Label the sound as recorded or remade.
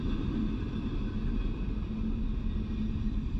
recorded